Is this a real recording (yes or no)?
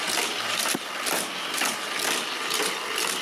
no